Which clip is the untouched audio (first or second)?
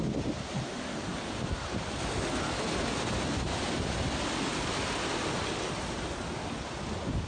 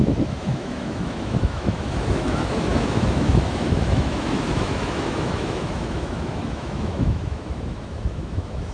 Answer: first